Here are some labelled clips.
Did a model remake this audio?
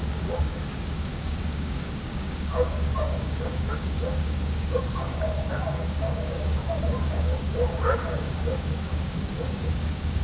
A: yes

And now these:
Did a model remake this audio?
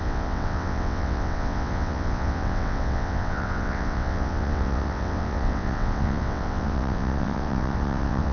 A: yes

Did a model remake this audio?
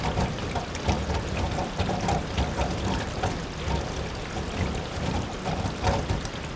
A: no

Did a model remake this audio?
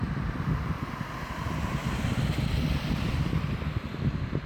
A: yes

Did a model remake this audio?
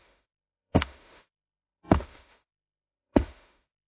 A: yes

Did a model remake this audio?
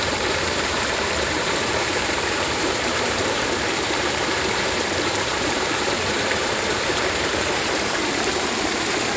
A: yes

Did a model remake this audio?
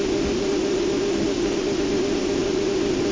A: no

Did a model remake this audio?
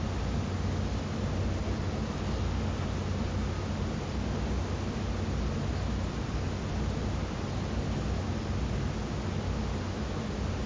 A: no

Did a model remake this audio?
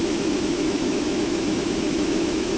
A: yes